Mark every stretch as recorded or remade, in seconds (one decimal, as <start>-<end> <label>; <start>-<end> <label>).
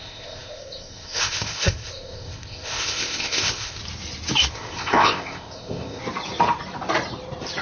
0.0-3.8 remade; 3.8-4.5 recorded; 4.5-6.0 remade; 6.0-7.6 recorded